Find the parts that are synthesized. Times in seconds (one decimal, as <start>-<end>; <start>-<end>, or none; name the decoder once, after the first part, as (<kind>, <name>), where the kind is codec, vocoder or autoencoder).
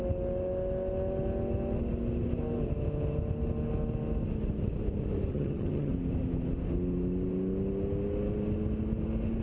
5.3-5.9 (vocoder, HiFi-GAN)